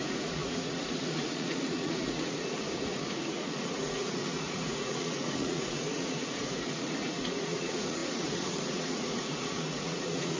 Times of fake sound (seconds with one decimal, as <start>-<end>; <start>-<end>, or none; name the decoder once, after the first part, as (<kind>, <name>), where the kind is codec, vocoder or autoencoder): 0.0-10.4 (vocoder, Vocos)